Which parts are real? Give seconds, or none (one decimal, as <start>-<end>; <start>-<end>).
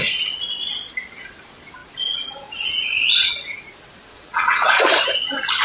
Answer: 0.0-4.1; 4.8-5.6